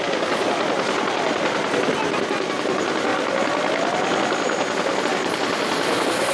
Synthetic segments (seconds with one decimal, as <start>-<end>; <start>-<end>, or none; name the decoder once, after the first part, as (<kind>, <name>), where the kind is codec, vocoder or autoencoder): none